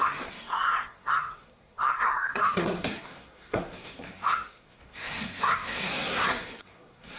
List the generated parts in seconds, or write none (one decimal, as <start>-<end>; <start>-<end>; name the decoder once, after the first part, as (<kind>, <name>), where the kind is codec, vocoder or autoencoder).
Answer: 0.0-7.2 (codec, SNAC)